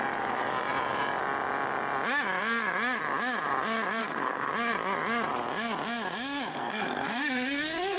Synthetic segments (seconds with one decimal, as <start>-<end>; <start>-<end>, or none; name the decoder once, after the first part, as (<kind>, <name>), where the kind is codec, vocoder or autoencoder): 4.0-4.5 (codec, SNAC); 6.5-8.0